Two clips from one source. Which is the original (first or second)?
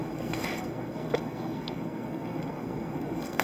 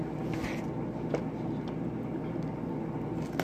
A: second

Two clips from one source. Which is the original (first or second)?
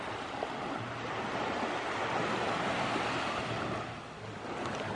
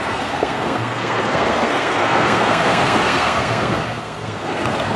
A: first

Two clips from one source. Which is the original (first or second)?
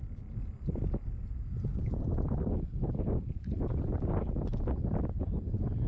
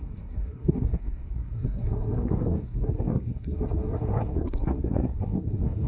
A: first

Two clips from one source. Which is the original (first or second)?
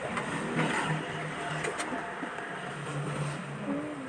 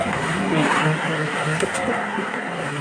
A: first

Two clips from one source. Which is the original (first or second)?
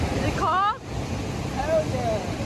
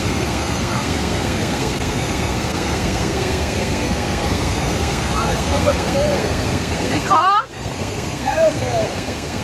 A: first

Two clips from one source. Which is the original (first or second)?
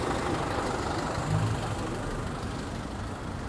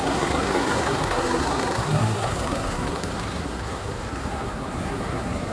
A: first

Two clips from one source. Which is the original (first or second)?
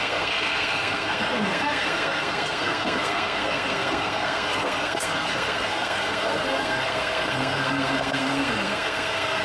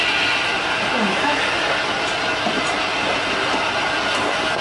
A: second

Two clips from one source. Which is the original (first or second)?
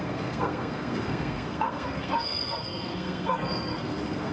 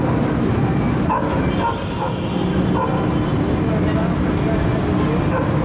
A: second